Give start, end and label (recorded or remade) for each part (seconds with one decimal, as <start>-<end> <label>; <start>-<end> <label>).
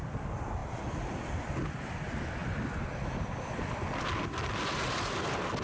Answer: 0.0-5.6 recorded